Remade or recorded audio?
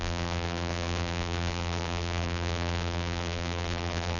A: remade